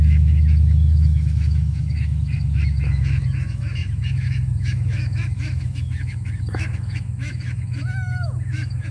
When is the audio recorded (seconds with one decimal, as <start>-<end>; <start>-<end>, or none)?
none

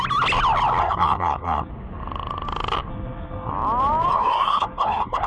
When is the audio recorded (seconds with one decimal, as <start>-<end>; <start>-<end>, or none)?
0.0-0.8; 1.7-2.9; 3.5-4.1

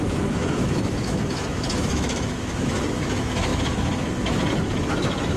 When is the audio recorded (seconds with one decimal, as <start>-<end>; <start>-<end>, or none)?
none

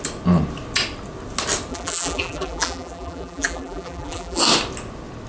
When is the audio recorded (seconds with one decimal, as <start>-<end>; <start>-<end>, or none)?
0.0-1.7; 4.4-5.3

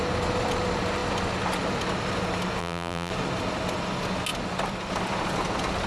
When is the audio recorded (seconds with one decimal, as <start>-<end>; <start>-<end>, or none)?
0.0-2.6; 3.1-5.9

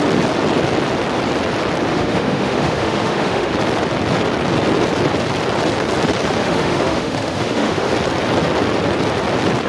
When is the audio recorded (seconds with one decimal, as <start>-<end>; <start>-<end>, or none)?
0.0-1.9; 3.5-6.4; 7.9-9.7

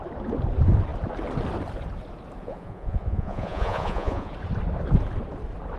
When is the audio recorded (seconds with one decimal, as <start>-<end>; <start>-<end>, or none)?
0.0-2.4; 4.3-5.8